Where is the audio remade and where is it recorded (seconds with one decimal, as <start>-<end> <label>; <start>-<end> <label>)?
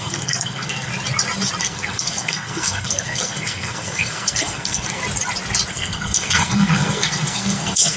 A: 0.0-0.9 remade; 0.9-1.6 recorded; 1.6-5.0 remade; 5.0-5.7 recorded; 5.7-8.0 remade